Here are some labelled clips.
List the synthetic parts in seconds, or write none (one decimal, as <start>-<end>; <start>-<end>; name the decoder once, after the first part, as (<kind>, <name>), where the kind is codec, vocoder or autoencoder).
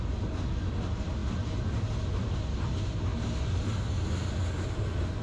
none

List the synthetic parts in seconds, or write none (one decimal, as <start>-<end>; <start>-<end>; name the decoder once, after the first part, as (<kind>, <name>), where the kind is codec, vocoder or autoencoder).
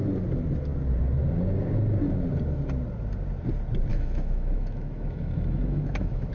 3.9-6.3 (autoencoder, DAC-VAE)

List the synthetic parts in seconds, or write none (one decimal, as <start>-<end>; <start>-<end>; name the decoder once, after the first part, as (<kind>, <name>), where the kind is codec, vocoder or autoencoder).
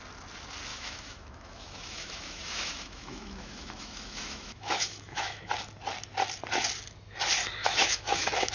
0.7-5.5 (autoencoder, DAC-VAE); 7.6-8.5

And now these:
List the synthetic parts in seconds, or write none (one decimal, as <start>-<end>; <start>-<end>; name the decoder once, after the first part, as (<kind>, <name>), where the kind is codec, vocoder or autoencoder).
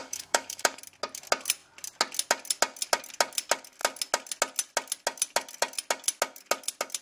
0.0-0.8 (autoencoder, DAC-VAE)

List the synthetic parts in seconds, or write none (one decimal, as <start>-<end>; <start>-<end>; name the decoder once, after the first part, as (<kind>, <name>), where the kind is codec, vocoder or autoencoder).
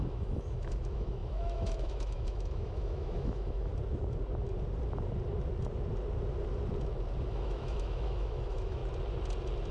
0.0-3.7 (autoencoder, DAC-VAE); 7.3-8.8